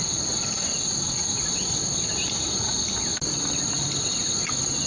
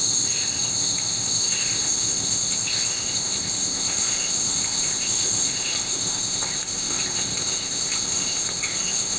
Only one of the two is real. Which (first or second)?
first